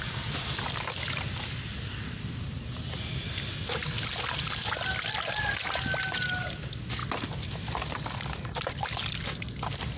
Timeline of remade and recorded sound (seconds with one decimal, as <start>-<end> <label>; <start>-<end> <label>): 0.0-10.0 recorded